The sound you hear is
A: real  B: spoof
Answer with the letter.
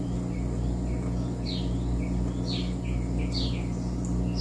A